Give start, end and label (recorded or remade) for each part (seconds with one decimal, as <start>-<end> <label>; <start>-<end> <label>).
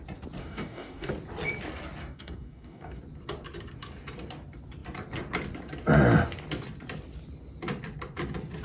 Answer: 0.0-0.4 recorded; 0.4-1.1 remade; 1.1-2.0 recorded; 2.0-3.0 remade; 3.0-8.6 recorded